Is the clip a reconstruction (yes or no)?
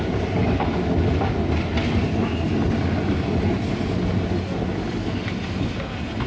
no